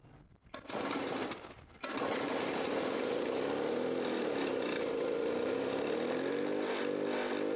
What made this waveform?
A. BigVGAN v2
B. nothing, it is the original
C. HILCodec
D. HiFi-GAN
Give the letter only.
B